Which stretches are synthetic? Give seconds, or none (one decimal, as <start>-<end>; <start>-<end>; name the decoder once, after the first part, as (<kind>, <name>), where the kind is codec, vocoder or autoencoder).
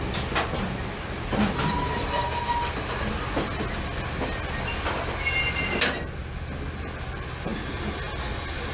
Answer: none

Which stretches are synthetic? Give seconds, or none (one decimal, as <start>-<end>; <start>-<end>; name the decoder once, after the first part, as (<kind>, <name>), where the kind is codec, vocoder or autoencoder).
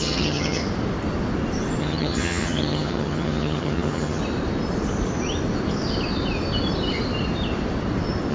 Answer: 0.0-0.6 (vocoder, HiFi-GAN); 1.8-4.2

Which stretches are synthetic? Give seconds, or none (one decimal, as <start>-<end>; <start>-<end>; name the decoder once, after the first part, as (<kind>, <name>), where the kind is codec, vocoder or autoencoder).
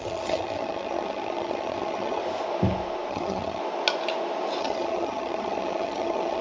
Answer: 0.0-2.2 (vocoder, HiFi-GAN); 3.1-3.6; 4.6-6.4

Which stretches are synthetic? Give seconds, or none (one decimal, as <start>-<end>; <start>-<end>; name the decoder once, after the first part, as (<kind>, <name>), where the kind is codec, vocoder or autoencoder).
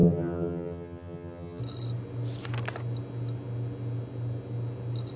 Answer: 0.0-1.6 (vocoder, HiFi-GAN)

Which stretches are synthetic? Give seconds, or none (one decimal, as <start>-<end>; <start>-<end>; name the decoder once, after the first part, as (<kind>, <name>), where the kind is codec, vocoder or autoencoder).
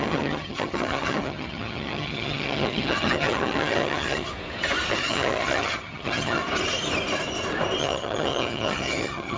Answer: 0.0-4.3 (vocoder, HiFi-GAN); 4.9-6.4; 7.8-9.4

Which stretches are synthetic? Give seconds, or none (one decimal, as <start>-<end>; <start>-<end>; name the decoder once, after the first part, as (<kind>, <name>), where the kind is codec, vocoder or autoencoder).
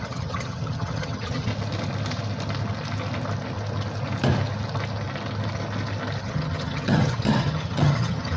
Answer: 0.0-1.5 (vocoder, HiFi-GAN); 6.2-8.4